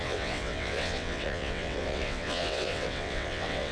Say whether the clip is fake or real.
fake